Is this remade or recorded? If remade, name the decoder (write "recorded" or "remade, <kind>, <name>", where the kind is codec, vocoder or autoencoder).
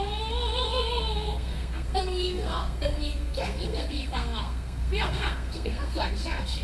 remade, codec, SNAC